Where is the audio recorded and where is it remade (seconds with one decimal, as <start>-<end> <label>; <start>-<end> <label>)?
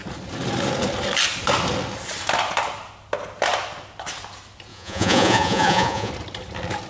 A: 0.0-4.7 recorded; 4.7-6.1 remade; 6.1-6.9 recorded